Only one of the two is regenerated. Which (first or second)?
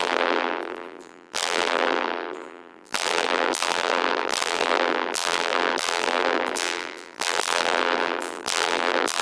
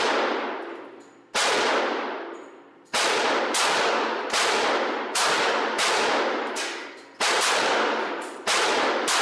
first